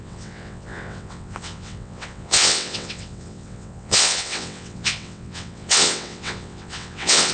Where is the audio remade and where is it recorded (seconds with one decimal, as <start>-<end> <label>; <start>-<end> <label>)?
0.0-7.3 remade